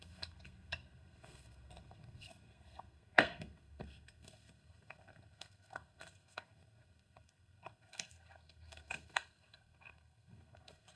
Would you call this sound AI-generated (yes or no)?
yes